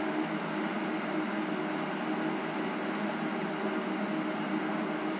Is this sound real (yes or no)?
yes